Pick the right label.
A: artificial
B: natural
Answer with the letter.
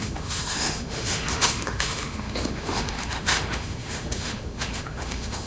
A